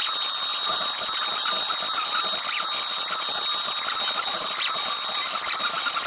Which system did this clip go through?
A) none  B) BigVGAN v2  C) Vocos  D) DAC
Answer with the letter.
A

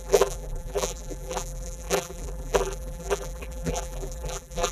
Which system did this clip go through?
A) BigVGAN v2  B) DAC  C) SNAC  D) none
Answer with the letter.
A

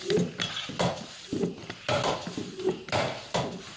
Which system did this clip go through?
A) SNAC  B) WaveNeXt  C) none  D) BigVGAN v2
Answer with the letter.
C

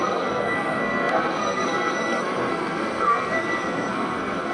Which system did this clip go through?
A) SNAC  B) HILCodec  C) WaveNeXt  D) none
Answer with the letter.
A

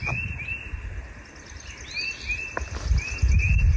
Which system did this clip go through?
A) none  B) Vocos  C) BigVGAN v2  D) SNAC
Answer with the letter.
A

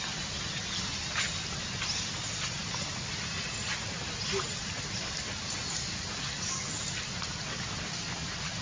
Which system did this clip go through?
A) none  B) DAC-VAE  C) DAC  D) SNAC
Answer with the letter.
A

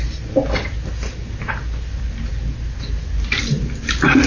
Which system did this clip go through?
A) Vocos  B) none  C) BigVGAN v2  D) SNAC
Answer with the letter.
B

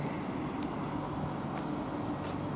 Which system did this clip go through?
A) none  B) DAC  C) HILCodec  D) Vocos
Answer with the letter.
A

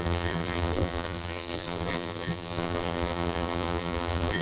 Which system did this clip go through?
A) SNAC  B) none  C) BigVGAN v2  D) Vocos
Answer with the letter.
C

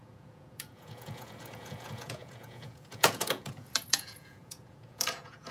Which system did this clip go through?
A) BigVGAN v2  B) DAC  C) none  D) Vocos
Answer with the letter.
D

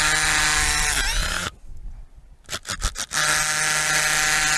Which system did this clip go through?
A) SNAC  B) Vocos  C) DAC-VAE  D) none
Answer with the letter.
D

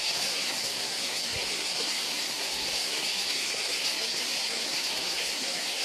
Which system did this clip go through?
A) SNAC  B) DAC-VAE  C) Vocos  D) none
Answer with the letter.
A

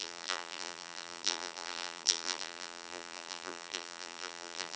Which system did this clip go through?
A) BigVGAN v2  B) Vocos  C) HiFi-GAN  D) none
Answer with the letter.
A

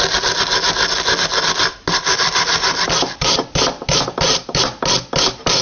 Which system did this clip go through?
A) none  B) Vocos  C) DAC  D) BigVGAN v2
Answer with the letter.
A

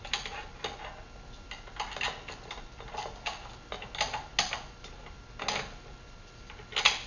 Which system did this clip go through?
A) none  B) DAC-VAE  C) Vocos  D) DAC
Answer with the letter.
A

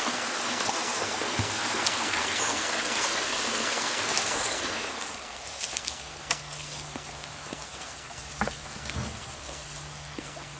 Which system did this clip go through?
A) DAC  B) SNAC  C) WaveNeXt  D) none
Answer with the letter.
B